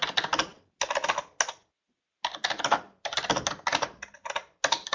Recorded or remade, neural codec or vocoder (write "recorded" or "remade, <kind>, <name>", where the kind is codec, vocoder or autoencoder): recorded